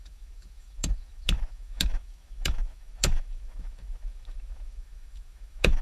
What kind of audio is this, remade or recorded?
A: remade